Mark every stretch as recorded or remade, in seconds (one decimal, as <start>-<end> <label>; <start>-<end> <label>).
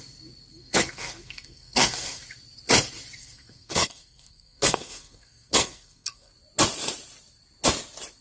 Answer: 0.0-0.5 recorded; 0.5-2.2 remade; 2.2-3.2 recorded; 3.2-6.3 remade; 6.3-8.2 recorded